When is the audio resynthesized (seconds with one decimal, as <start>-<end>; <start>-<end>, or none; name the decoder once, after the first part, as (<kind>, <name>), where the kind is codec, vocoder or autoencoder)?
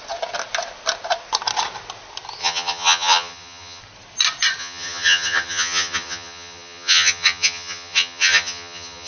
2.4-3.8 (vocoder, HiFi-GAN); 4.6-9.1